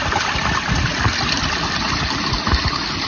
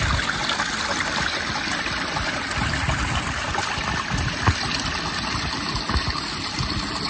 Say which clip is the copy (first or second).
first